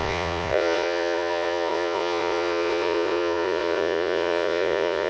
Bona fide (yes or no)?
no